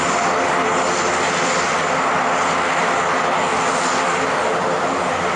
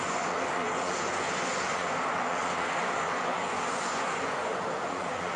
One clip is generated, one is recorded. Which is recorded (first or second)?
first